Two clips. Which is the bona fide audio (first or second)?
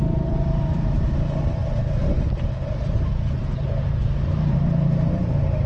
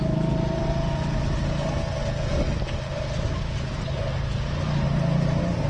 second